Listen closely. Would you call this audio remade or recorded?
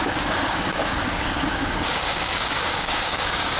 remade